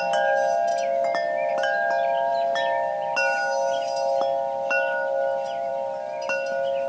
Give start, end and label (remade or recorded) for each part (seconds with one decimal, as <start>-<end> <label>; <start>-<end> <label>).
0.0-6.9 recorded